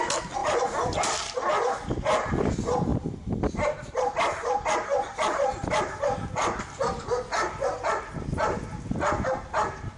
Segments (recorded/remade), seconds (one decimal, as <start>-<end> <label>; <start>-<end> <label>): 0.0-0.4 recorded; 0.4-1.3 remade; 1.3-10.0 recorded